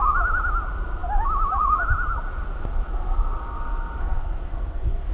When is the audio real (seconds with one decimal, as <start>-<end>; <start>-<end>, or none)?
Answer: 0.0-4.0